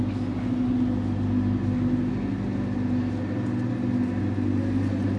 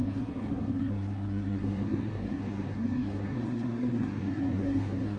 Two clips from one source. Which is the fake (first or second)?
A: second